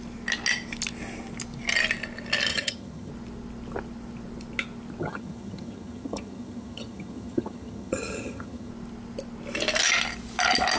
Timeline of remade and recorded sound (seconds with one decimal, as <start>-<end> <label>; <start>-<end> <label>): 0.0-2.5 recorded; 2.5-3.1 remade; 3.1-5.0 recorded; 5.0-8.7 remade; 8.7-10.8 recorded